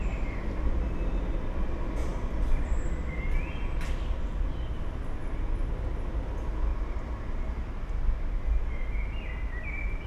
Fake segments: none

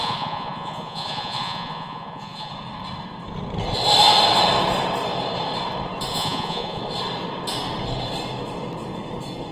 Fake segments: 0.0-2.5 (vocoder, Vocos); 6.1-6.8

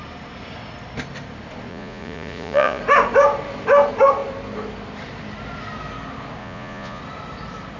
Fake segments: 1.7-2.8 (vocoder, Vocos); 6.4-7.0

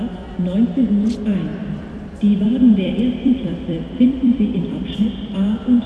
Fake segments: 1.5-5.0 (vocoder, BigVGAN v2)

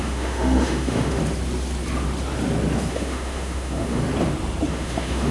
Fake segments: 0.0-1.2 (autoencoder, DAC-VAE); 2.9-4.0; 4.7-5.3